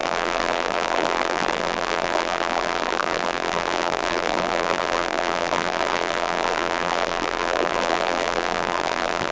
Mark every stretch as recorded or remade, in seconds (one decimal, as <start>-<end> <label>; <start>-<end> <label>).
0.0-9.3 remade